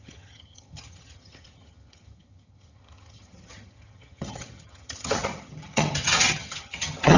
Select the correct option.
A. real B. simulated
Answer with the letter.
B